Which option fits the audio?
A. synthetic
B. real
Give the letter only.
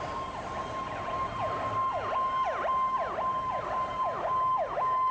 B